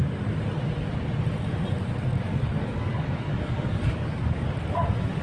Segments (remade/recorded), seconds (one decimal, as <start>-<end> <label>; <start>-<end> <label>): 0.0-2.1 recorded; 2.1-4.6 remade; 4.6-5.2 recorded